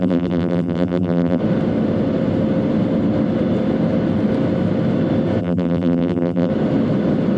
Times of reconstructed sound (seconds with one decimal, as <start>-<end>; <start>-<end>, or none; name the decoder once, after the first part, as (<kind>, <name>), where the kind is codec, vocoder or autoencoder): 0.0-1.4 (vocoder, BigVGAN v2); 5.4-6.5